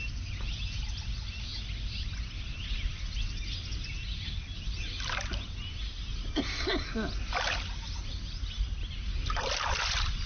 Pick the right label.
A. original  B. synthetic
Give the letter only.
A